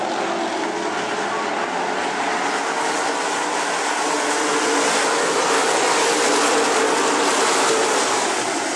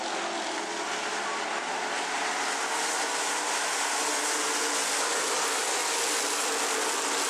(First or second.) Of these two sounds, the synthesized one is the first